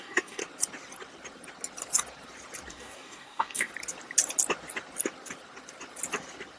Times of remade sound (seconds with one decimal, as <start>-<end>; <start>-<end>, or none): 0.0-0.4; 2.7-3.7